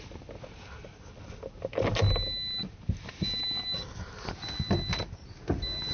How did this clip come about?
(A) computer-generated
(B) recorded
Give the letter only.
B